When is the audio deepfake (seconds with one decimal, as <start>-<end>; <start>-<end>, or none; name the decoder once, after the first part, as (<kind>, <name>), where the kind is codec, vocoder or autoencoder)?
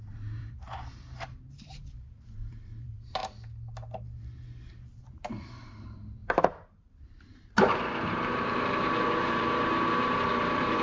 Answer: 0.0-3.2 (vocoder, BigVGAN v2); 4.0-10.8